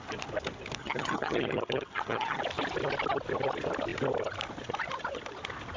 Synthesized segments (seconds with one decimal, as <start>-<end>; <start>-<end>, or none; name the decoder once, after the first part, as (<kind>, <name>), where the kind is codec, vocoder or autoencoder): 0.8-2.4 (vocoder, HiFi-GAN)